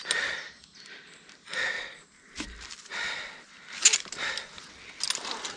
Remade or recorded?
recorded